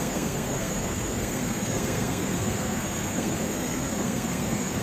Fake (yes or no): yes